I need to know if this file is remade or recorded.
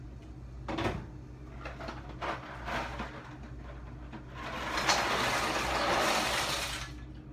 recorded